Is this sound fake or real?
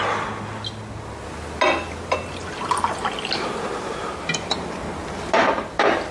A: real